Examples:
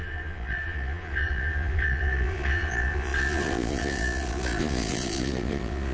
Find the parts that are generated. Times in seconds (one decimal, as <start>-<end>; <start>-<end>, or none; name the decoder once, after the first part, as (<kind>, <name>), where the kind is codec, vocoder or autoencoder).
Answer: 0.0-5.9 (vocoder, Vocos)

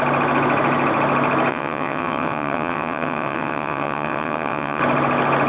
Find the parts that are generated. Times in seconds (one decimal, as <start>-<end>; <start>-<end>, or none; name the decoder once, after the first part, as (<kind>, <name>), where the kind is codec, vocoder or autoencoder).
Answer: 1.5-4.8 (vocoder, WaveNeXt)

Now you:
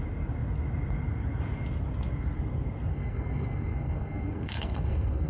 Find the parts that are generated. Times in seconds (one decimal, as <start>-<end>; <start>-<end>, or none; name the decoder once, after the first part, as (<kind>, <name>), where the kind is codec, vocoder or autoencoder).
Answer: 2.9-5.3 (codec, SNAC)